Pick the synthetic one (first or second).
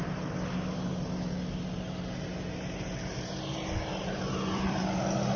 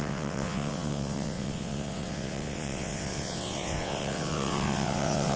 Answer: second